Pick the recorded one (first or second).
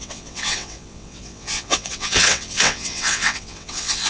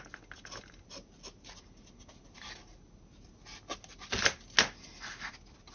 second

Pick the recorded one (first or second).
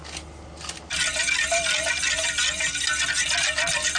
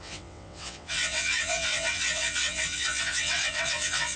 first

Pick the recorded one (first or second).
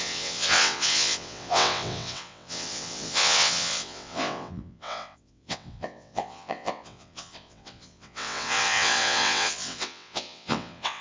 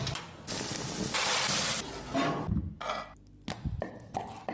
second